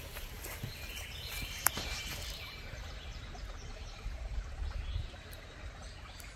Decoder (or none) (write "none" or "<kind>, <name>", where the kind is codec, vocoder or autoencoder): vocoder, BigVGAN v2